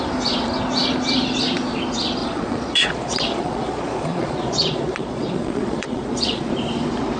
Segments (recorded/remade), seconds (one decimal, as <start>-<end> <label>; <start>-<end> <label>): 0.0-2.2 recorded; 2.2-6.5 remade; 6.5-7.2 recorded